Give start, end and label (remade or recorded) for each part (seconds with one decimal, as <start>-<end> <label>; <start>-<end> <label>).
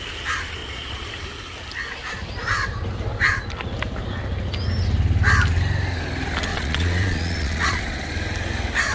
0.0-0.6 recorded; 0.6-1.1 remade; 1.1-6.5 recorded; 6.5-7.8 remade; 7.8-8.9 recorded